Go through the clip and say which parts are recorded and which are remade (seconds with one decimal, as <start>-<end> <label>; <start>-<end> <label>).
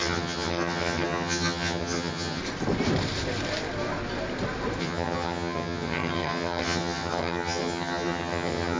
0.0-2.4 remade; 2.4-4.8 recorded; 4.8-8.8 remade